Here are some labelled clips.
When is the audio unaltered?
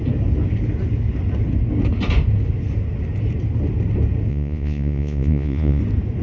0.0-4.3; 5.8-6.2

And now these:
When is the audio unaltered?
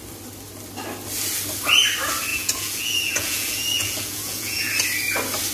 0.0-2.3; 4.7-5.5